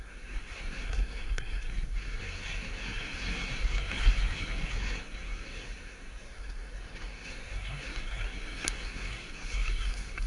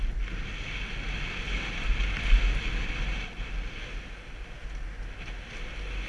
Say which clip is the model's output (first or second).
first